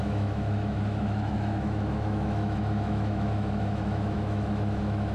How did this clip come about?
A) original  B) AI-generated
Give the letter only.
B